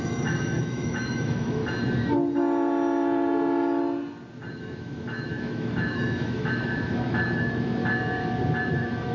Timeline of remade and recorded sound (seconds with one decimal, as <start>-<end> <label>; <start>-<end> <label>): 0.0-1.6 remade; 1.6-4.5 recorded; 4.5-7.8 remade; 7.8-8.7 recorded; 8.7-9.1 remade